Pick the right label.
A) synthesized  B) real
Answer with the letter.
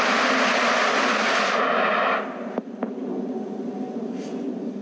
B